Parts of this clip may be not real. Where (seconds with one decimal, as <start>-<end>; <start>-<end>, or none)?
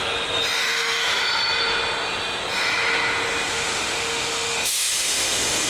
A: 0.6-1.2; 3.5-5.7